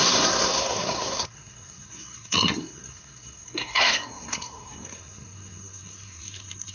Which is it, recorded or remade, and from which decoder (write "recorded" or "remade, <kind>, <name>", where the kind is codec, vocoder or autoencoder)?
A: remade, codec, SNAC